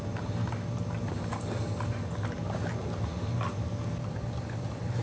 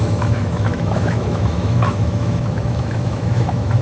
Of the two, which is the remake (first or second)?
second